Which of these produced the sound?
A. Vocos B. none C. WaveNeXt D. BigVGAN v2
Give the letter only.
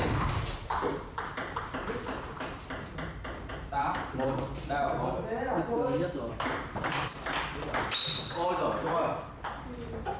D